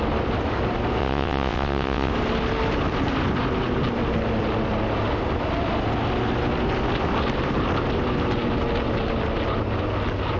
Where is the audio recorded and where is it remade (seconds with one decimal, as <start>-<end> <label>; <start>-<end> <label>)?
0.0-1.0 recorded; 1.0-2.1 remade; 2.1-10.4 recorded